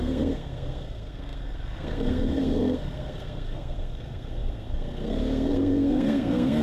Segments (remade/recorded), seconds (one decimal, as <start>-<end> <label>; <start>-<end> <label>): 0.0-6.6 remade